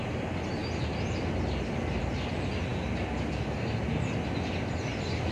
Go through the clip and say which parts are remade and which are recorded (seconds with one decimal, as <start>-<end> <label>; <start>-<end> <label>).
0.0-5.3 recorded